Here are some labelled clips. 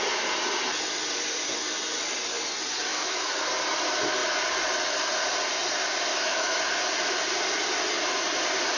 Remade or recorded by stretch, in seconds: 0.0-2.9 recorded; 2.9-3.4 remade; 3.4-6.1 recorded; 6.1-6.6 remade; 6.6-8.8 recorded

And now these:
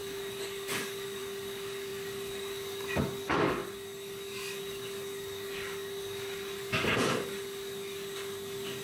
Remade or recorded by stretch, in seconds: 0.0-8.8 remade

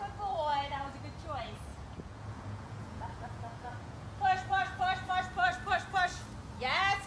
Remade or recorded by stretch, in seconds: 0.0-0.5 recorded; 0.5-1.0 remade; 1.0-1.7 recorded; 1.7-5.1 remade; 5.1-7.1 recorded

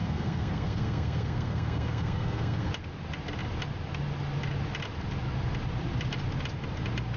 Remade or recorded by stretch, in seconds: 0.0-2.7 remade; 2.7-7.2 recorded

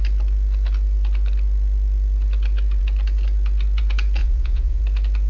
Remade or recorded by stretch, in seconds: 0.0-4.2 recorded; 4.2-4.8 remade; 4.8-5.3 recorded

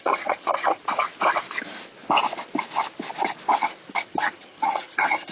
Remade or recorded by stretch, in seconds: 0.0-0.8 remade; 0.8-4.0 recorded; 4.0-5.3 remade

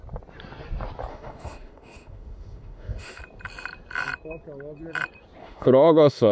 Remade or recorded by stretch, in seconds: 0.0-1.1 recorded; 1.1-3.2 remade; 3.2-5.4 recorded; 5.4-6.3 remade

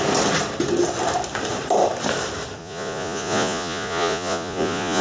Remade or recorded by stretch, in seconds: 0.0-2.6 recorded; 2.6-5.0 remade